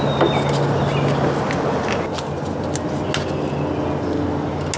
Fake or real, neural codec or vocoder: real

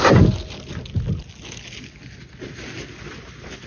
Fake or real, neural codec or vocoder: real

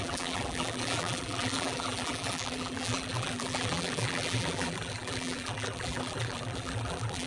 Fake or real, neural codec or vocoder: fake, vocoder, BigVGAN v2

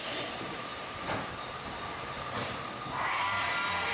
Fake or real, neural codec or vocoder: fake, vocoder, BigVGAN v2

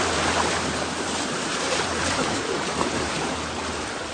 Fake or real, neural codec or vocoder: fake, vocoder, BigVGAN v2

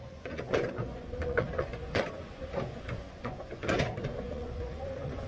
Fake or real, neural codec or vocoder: fake, vocoder, Vocos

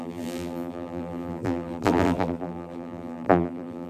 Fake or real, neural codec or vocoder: fake, vocoder, BigVGAN v2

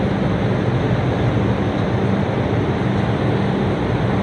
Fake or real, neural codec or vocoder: real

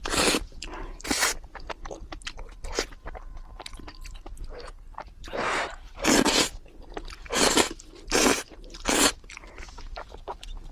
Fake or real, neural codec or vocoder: real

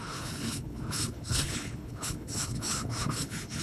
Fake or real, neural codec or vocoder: fake, codec, HILCodec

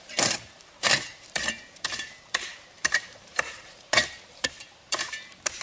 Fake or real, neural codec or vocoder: fake, vocoder, BigVGAN v2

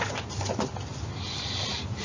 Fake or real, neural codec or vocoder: real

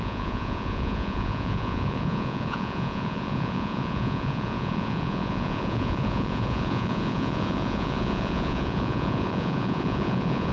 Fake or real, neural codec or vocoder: fake, vocoder, Vocos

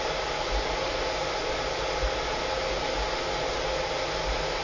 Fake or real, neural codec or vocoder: real